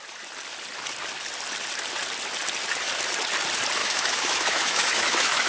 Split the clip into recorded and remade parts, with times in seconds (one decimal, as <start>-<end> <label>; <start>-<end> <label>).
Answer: 0.0-3.8 recorded; 3.8-5.5 remade